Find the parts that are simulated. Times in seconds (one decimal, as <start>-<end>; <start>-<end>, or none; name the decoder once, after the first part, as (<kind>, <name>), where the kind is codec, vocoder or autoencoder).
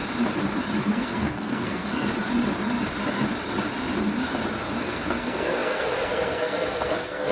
0.8-2.1 (codec, SNAC); 4.8-7.3